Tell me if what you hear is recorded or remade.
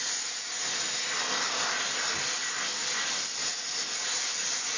recorded